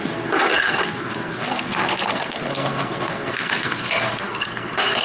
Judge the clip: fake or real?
fake